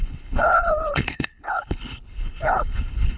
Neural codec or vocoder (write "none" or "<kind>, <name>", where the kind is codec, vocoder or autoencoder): codec, HILCodec